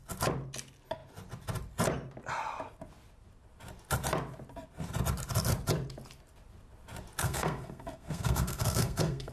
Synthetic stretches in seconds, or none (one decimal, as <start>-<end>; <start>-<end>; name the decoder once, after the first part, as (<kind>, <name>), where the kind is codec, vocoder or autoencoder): 7.2-9.3 (codec, SNAC)